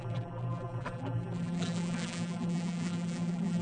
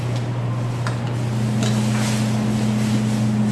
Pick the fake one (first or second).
first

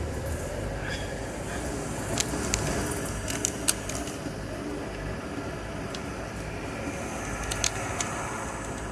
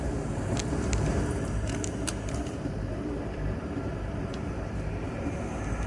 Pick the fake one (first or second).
second